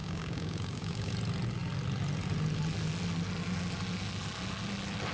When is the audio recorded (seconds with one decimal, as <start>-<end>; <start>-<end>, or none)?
1.1-5.1